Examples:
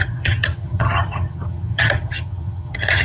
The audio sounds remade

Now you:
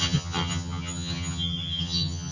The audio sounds remade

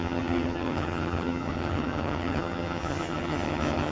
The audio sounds remade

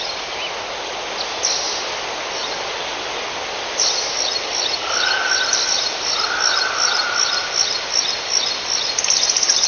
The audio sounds recorded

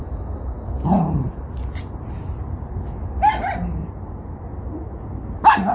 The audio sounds recorded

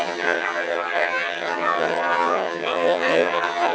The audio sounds remade